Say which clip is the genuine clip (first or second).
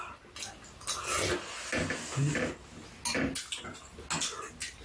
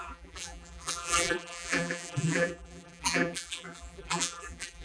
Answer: first